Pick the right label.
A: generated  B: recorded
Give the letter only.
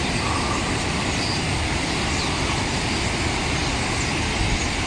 B